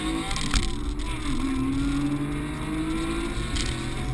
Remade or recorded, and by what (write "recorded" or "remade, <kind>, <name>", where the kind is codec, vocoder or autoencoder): recorded